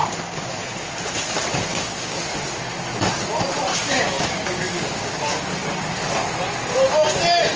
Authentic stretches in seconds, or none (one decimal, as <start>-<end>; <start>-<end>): 0.0-1.7; 2.2-3.7; 5.1-7.6